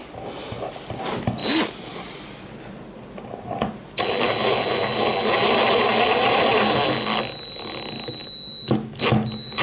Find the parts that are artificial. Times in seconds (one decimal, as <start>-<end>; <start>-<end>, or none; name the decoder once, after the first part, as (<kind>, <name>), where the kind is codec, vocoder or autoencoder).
none